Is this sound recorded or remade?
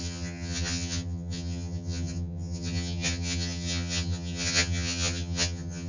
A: remade